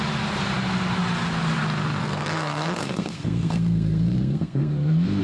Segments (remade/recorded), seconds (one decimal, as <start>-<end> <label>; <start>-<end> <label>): 0.0-2.0 recorded; 2.0-5.2 remade